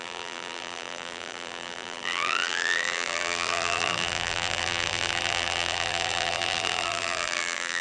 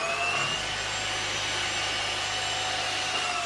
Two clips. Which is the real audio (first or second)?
second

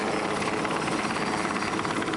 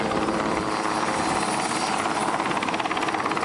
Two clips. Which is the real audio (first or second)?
second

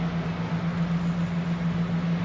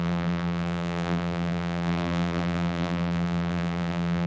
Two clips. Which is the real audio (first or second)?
first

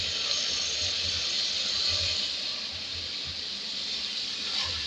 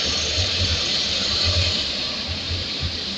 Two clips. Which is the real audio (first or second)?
first